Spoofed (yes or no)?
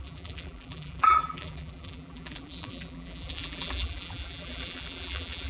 yes